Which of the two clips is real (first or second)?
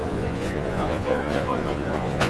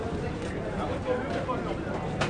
second